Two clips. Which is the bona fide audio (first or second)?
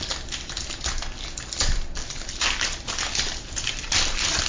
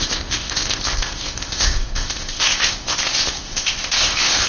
first